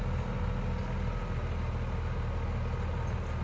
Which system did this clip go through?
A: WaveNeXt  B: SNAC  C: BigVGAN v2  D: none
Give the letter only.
D